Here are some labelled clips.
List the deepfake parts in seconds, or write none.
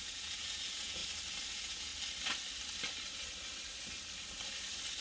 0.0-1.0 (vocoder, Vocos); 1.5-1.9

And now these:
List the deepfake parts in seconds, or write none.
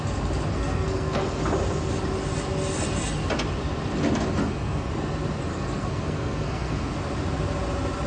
0.5-1.4 (codec, SNAC); 4.4-4.9; 5.5-6.9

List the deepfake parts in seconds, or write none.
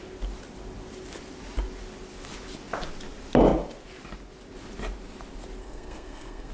5.6-6.5 (codec, SNAC)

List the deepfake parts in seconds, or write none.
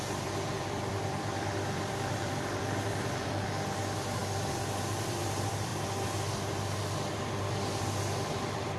0.0-4.2 (vocoder, BigVGAN v2); 4.8-5.7; 7.8-8.8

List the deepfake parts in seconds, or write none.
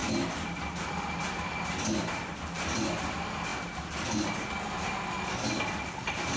none